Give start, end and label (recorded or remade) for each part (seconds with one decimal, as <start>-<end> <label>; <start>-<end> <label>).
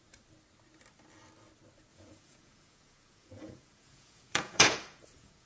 0.0-1.9 recorded; 1.9-5.5 remade